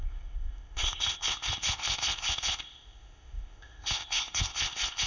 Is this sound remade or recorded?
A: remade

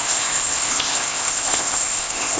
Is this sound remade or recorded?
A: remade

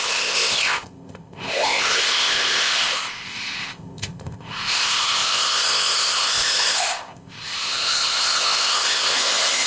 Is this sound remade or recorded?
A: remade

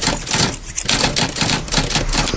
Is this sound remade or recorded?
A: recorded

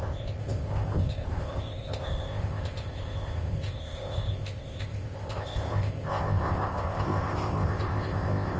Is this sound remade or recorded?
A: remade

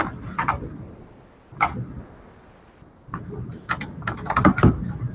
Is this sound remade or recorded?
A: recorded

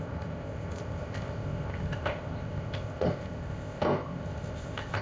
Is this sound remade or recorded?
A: remade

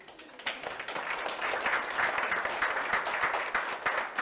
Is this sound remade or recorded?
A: recorded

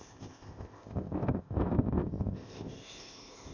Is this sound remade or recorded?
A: remade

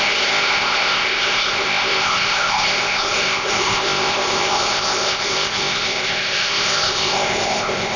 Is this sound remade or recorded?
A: remade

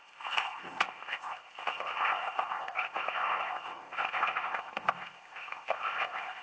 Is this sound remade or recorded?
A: remade